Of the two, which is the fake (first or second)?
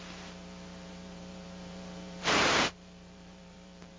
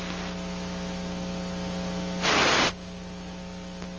first